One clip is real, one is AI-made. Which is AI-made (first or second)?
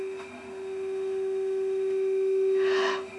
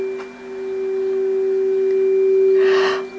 first